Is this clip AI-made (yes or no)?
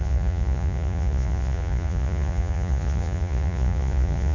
yes